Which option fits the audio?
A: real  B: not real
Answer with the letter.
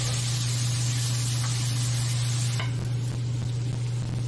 A